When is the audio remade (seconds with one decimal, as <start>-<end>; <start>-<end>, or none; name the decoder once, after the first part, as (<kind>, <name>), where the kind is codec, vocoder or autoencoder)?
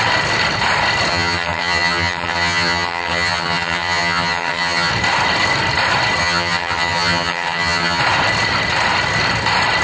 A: 1.1-4.9 (vocoder, HiFi-GAN); 6.2-8.0